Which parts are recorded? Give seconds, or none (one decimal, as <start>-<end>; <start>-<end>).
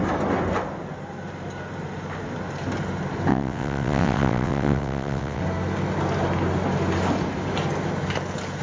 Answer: 0.0-3.3; 5.4-8.6